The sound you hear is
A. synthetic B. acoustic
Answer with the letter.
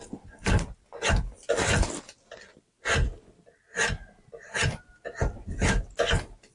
B